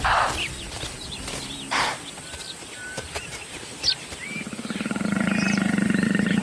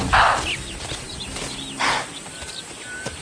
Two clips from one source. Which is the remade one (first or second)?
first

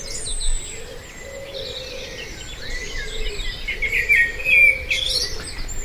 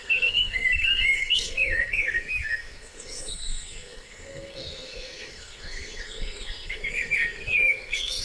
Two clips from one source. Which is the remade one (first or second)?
second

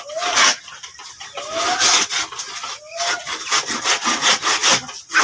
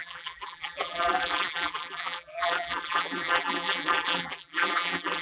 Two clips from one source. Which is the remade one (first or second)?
second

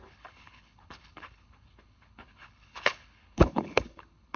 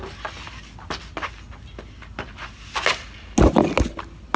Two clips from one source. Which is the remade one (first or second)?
first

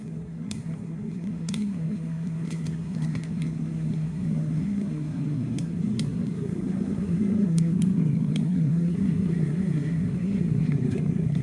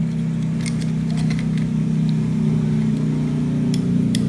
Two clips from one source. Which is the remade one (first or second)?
first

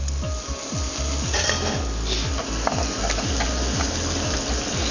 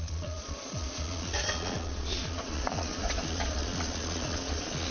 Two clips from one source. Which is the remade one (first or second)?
second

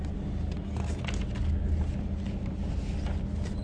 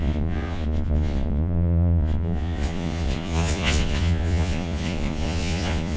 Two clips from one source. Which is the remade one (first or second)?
second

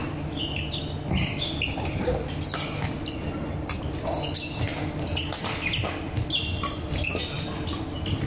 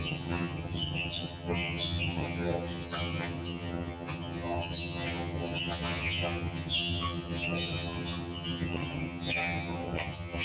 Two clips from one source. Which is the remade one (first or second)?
second